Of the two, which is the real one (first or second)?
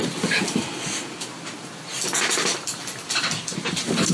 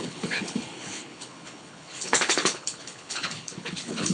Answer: first